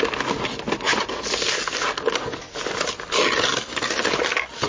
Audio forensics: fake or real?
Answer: real